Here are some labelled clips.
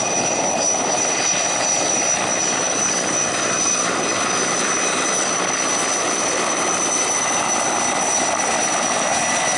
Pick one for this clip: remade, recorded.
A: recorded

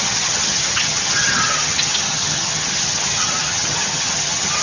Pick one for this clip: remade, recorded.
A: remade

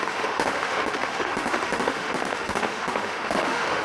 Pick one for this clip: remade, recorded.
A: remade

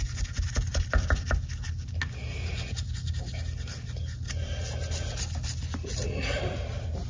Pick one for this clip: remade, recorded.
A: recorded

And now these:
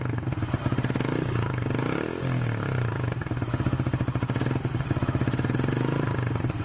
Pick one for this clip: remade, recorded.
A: recorded